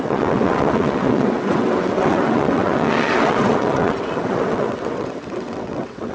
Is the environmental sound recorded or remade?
remade